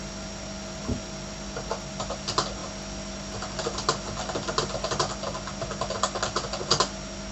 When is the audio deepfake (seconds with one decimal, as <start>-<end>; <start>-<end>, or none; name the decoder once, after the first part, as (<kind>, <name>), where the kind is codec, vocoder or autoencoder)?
none